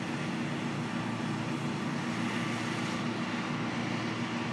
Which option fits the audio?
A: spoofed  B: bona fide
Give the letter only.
B